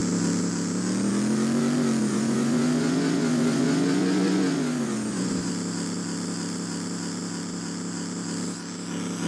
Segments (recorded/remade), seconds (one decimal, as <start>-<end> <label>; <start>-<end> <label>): 0.0-2.1 recorded; 2.1-5.5 remade; 5.5-9.3 recorded